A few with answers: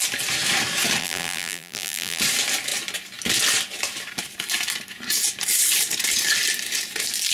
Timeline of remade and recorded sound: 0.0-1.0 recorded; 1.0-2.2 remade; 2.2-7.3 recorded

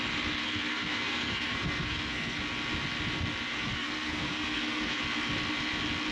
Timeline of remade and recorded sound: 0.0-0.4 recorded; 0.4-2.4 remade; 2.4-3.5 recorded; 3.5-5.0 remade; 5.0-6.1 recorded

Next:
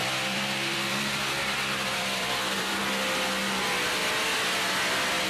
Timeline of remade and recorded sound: 0.0-2.8 remade; 2.8-5.3 recorded

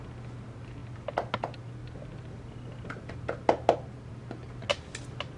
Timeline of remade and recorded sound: 0.0-5.4 recorded

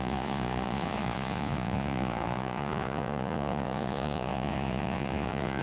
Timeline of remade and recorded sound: 0.0-5.6 remade